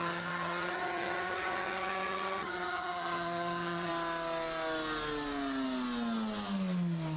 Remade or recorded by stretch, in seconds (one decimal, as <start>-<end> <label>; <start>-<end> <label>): 0.0-3.9 remade; 3.9-7.2 recorded

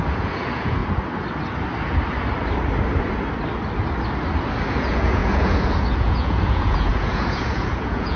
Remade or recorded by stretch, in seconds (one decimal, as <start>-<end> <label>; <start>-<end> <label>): 0.0-0.8 remade; 0.8-4.7 recorded; 4.7-8.2 remade

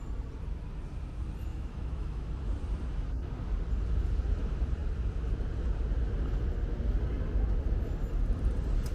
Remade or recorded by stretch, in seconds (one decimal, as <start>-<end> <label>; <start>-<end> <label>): 0.0-1.5 recorded; 1.5-2.3 remade; 2.3-8.9 recorded

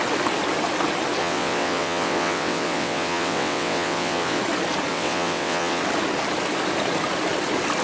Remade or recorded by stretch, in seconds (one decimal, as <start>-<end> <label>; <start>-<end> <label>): 0.0-1.2 recorded; 1.2-4.4 remade; 4.4-4.9 recorded; 4.9-5.8 remade; 5.8-7.8 recorded

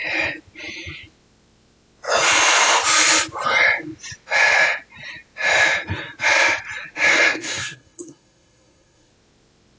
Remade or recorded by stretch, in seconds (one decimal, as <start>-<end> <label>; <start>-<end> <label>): 0.0-7.1 recorded; 7.1-9.1 remade; 9.1-9.8 recorded

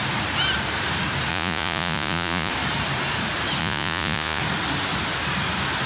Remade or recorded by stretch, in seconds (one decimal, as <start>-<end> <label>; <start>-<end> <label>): 0.0-1.3 recorded; 1.3-2.5 remade; 2.5-3.6 recorded; 3.6-4.4 remade; 4.4-5.9 recorded

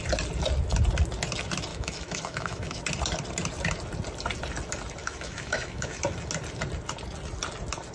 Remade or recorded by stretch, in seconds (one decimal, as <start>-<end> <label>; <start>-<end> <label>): 0.0-1.7 recorded; 1.7-2.8 remade; 2.8-5.0 recorded; 5.0-6.0 remade; 6.0-7.9 recorded

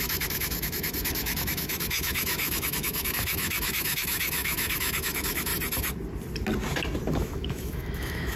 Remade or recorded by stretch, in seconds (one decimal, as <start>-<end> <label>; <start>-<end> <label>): 0.0-5.5 remade; 5.5-7.1 recorded; 7.1-8.4 remade